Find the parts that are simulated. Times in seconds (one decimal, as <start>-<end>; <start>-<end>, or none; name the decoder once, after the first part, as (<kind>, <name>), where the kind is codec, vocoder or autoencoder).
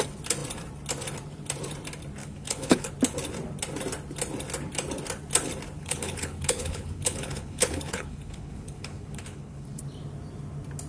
2.2-2.9 (codec, HILCodec); 5.8-9.8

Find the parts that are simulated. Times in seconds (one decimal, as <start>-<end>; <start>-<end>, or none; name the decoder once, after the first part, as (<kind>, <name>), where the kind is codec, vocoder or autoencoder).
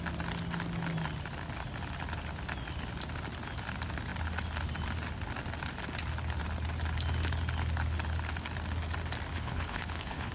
9.3-10.3 (codec, HILCodec)